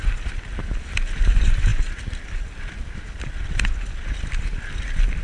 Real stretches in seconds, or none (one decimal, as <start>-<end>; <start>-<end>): 0.0-5.2